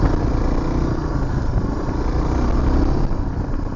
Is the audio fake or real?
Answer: real